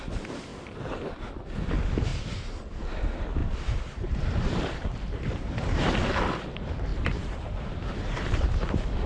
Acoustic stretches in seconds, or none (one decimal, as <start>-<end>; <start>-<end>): 0.0-0.5; 1.1-3.4; 5.5-6.9